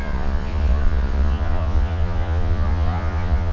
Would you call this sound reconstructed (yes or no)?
yes